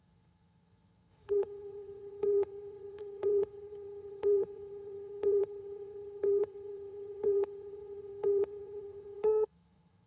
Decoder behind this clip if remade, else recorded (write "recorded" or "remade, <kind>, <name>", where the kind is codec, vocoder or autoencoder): remade, vocoder, HiFi-GAN